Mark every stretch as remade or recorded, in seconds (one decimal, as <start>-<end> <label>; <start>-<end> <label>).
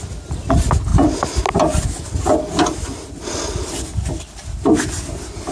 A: 0.0-5.5 recorded